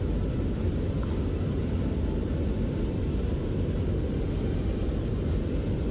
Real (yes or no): yes